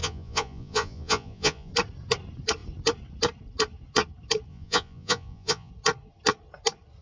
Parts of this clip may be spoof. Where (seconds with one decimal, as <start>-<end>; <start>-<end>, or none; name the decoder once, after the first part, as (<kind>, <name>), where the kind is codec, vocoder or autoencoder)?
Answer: 0.0-1.7 (vocoder, Vocos); 4.5-5.7